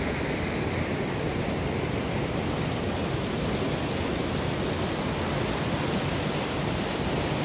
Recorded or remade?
recorded